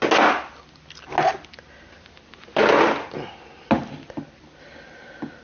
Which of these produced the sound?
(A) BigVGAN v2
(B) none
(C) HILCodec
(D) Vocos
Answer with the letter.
B